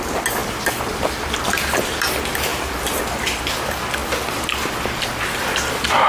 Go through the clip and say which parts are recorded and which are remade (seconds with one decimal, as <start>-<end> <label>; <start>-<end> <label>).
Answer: 0.0-0.4 recorded; 0.4-1.0 remade; 1.0-2.5 recorded; 2.5-3.5 remade; 3.5-4.0 recorded; 4.0-4.7 remade; 4.7-6.1 recorded